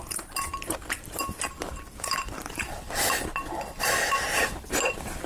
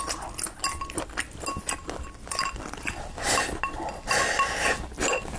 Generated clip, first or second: first